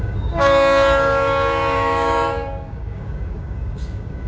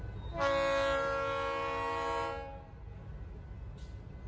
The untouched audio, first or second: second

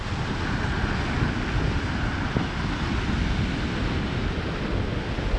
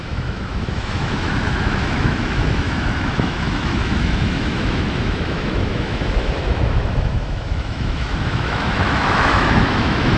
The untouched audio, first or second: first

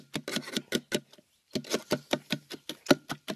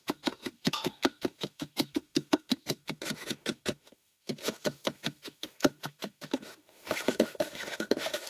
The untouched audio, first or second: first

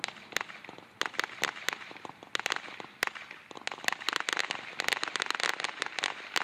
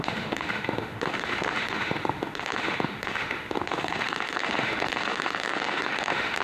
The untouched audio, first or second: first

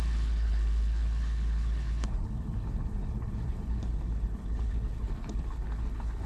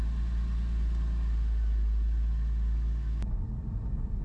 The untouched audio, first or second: second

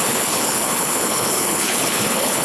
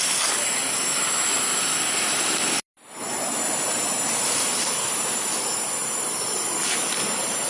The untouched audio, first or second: second